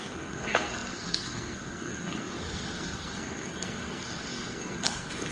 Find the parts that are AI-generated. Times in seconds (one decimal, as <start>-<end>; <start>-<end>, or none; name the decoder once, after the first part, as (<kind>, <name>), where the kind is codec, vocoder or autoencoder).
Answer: 0.0-5.3 (codec, SNAC)